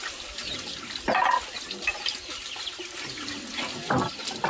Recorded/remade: recorded